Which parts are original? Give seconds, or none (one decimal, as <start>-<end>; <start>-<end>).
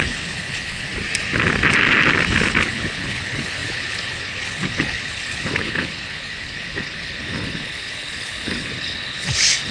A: 0.9-2.7